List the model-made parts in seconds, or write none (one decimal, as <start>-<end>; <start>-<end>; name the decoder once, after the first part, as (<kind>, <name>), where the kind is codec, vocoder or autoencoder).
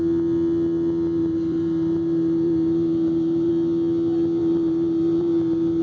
1.2-3.5 (vocoder, BigVGAN v2); 4.4-5.8